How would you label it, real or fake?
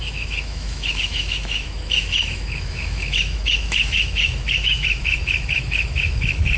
fake